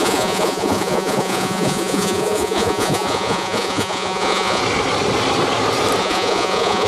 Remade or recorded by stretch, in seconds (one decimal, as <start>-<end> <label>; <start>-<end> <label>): 0.0-4.6 remade; 4.6-6.0 recorded; 6.0-6.9 remade